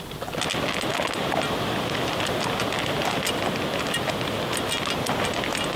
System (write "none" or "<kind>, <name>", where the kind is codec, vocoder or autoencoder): none